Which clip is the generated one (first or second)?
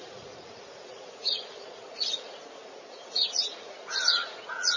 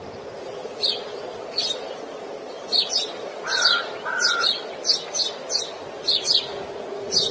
first